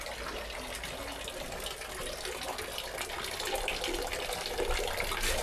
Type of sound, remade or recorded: recorded